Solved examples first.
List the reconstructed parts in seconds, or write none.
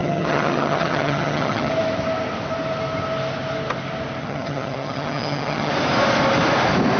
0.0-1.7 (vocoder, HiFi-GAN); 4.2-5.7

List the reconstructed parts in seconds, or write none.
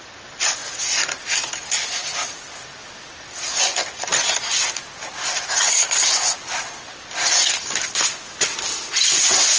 none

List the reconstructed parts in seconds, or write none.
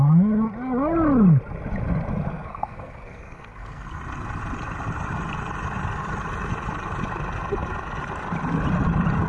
2.3-4.0 (codec, SNAC)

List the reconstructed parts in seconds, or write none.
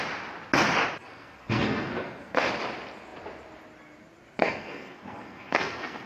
1.0-2.5 (codec, SNAC); 4.4-6.1